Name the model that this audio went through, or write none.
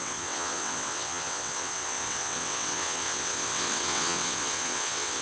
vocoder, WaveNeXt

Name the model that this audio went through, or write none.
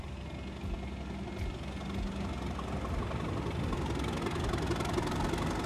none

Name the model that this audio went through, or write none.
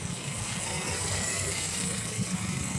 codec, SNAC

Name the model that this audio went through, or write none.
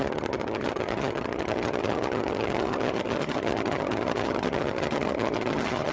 vocoder, HiFi-GAN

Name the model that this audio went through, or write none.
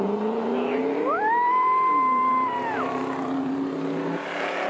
vocoder, BigVGAN v2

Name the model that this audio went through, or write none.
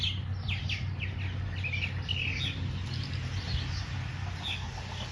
none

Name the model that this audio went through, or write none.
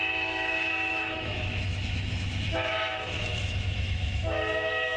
autoencoder, DAC-VAE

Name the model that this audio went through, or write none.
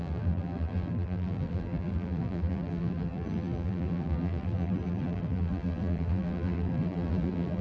vocoder, BigVGAN v2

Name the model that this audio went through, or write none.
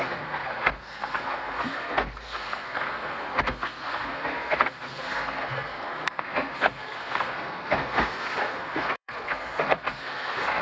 codec, SNAC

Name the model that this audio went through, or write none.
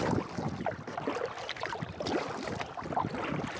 none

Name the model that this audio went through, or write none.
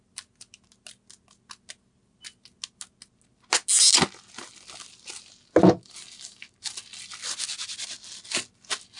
none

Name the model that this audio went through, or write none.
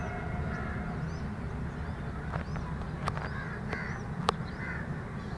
none